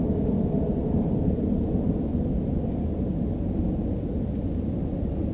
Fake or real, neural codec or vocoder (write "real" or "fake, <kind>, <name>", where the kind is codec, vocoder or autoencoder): real